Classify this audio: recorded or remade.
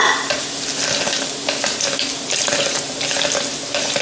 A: recorded